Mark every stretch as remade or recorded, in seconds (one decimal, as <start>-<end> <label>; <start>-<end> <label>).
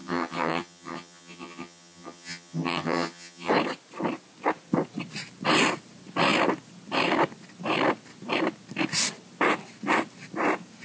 0.0-3.5 remade; 3.5-10.8 recorded